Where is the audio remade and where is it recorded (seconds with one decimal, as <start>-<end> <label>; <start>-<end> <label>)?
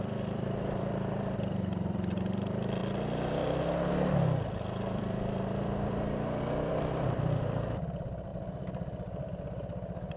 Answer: 0.0-8.3 remade; 8.3-10.2 recorded